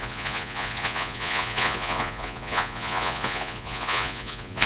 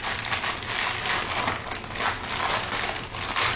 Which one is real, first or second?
second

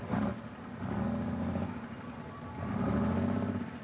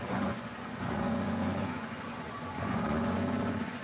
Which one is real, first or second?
first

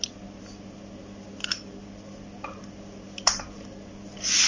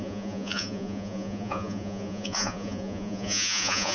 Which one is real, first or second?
first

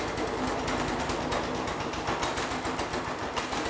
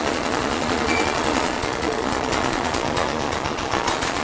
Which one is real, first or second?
first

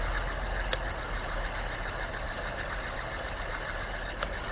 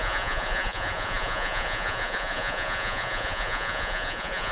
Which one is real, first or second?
first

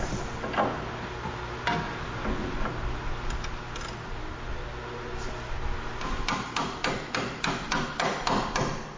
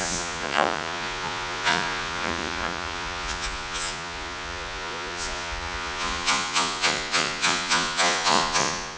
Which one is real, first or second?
first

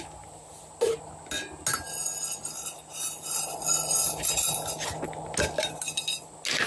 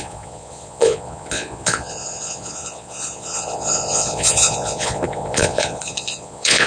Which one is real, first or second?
first